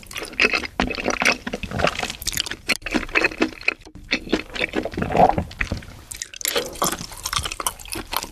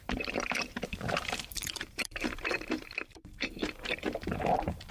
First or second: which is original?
first